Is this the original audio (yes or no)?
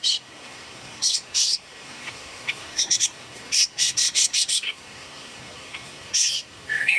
no